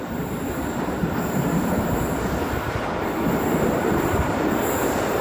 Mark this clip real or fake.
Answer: real